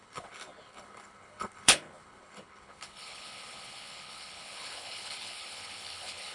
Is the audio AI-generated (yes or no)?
yes